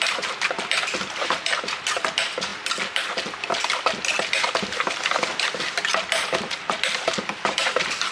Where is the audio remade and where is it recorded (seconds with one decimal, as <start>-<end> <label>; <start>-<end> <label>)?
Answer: 0.0-2.5 remade; 2.5-3.6 recorded; 3.6-8.1 remade